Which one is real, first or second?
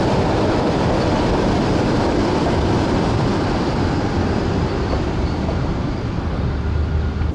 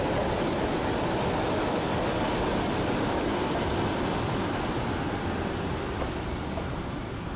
second